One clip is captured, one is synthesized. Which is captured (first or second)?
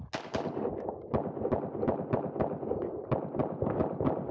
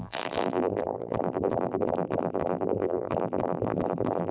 first